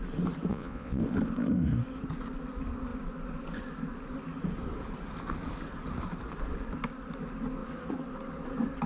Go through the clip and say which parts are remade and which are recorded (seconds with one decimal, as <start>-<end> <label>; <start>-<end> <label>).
0.0-0.5 recorded; 0.5-1.0 remade; 1.0-8.9 recorded